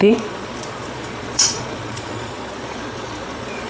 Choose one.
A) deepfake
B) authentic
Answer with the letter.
A